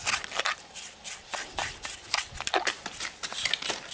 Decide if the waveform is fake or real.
real